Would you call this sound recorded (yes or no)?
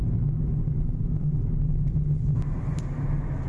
yes